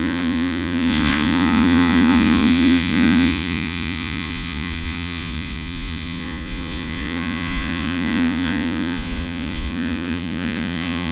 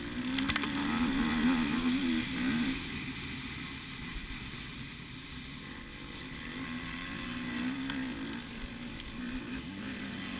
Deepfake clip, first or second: first